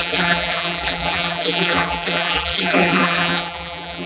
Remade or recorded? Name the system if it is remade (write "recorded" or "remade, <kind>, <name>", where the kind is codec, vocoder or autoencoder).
remade, vocoder, BigVGAN v2